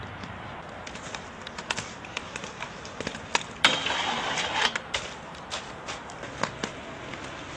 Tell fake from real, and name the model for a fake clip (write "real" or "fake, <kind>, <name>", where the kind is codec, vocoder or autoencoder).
fake, vocoder, BigVGAN v2